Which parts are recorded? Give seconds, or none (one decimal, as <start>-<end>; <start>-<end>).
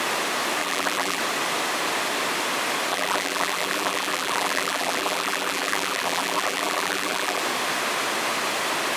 0.0-0.6; 1.2-2.9; 7.4-9.0